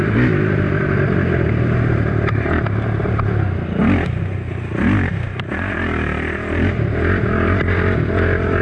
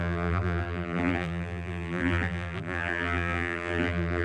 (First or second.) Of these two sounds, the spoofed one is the second